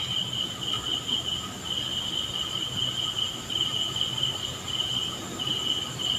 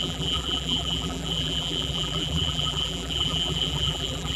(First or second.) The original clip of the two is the first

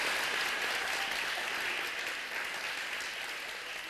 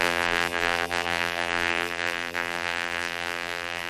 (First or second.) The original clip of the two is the first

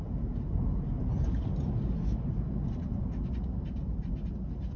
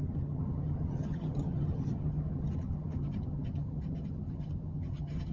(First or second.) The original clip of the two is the first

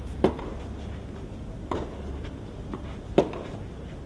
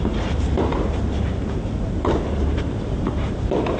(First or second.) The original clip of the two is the first